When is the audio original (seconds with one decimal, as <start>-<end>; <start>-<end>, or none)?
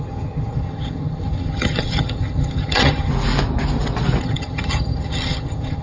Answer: 3.1-4.2